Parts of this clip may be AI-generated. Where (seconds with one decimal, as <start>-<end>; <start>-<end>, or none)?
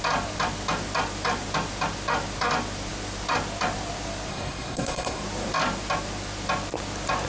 4.3-5.2